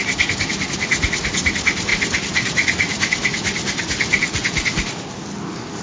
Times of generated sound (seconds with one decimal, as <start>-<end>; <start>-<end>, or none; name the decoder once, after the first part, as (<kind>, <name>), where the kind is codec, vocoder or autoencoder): none